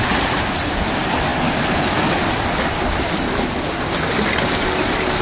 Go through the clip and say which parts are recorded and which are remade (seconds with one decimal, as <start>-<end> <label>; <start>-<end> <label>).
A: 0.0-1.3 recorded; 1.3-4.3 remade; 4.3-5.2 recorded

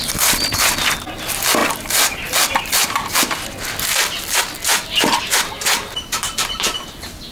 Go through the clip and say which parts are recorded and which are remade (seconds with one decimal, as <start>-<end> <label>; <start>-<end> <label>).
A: 0.0-1.6 recorded; 1.6-3.4 remade; 3.4-4.7 recorded; 4.7-6.8 remade; 6.8-7.3 recorded

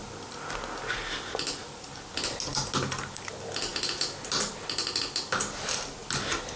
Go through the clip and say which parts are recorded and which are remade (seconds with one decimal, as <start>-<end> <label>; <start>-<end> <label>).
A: 0.0-0.8 remade; 0.8-6.6 recorded

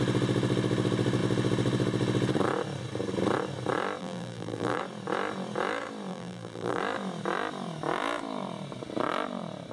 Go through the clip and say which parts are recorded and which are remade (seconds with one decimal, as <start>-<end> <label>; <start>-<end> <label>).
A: 0.0-4.0 recorded; 4.0-4.8 remade; 4.8-6.1 recorded; 6.1-6.8 remade; 6.8-9.7 recorded

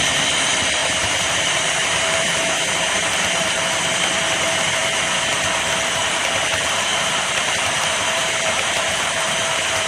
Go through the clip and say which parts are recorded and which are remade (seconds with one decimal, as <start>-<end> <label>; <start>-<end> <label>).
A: 0.0-0.8 recorded; 0.8-3.5 remade; 3.5-6.9 recorded; 6.9-9.9 remade

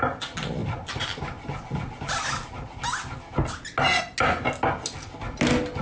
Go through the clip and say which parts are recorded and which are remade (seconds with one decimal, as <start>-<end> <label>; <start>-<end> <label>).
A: 0.0-5.8 recorded

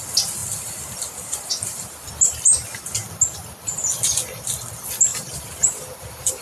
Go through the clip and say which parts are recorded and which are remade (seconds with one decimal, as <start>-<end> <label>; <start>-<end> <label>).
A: 0.0-0.4 recorded; 0.4-2.1 remade; 2.1-5.1 recorded; 5.1-6.4 remade